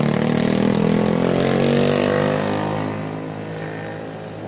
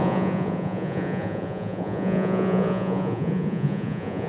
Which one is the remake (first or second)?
second